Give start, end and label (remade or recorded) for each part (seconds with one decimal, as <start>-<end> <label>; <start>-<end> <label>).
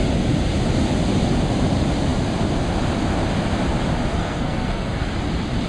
0.0-4.1 recorded; 4.1-5.1 remade; 5.1-5.7 recorded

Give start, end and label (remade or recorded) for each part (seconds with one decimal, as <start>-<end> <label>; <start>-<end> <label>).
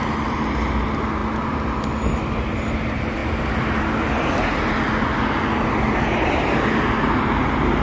0.0-7.8 recorded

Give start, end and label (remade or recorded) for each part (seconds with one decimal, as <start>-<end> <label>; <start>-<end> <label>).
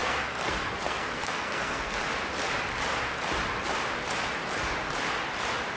0.0-2.0 remade; 2.0-5.8 recorded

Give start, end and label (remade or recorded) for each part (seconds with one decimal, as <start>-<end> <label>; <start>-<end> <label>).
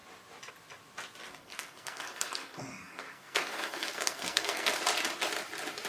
0.0-1.3 recorded; 1.3-4.8 remade; 4.8-5.9 recorded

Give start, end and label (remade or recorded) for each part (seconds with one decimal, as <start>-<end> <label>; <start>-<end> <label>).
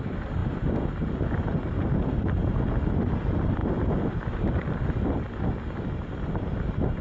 0.0-7.0 recorded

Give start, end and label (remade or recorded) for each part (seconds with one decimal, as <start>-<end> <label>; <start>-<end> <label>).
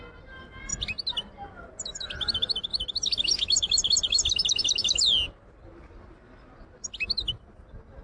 0.0-8.0 recorded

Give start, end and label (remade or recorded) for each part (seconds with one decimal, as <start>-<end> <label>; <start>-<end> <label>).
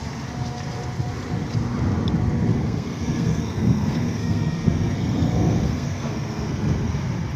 0.0-2.5 recorded; 2.5-6.9 remade; 6.9-7.4 recorded